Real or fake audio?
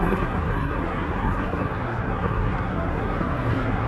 fake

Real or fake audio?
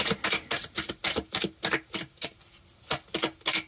real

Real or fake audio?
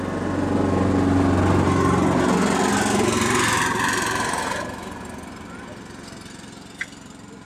real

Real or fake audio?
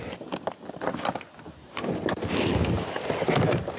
real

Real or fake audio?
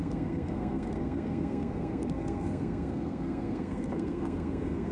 fake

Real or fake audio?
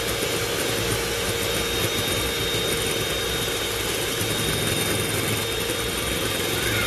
real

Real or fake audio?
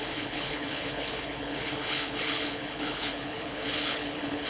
fake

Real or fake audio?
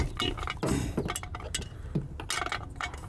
real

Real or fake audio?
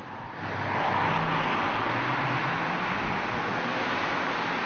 real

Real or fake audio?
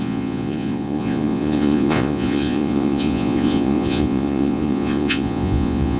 fake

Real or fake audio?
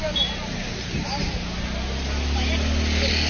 real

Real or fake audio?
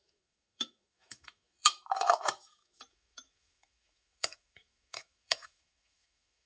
fake